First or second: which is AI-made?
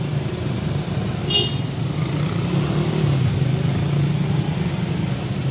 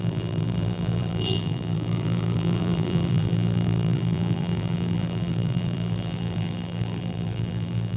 second